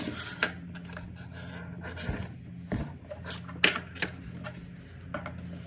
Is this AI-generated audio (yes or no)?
no